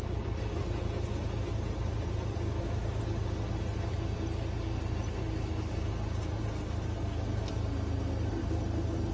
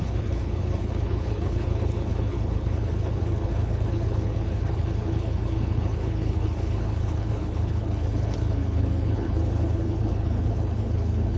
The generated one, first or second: second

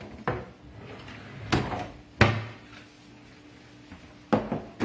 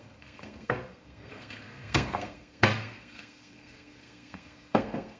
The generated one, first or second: second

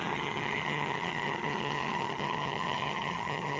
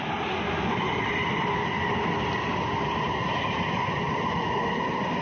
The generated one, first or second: first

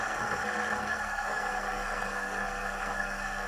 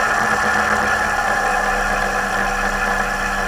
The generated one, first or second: first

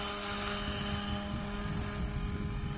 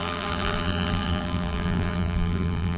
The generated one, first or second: second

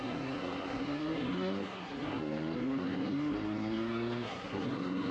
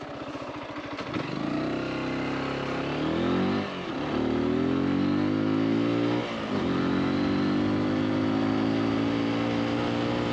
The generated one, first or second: first